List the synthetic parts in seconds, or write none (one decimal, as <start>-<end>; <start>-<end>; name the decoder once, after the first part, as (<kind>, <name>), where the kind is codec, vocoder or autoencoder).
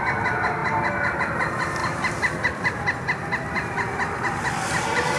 1.8-4.4 (vocoder, BigVGAN v2)